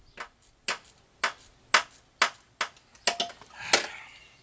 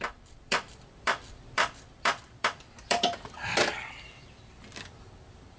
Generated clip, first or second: second